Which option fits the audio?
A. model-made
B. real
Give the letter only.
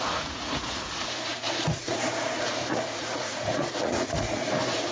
A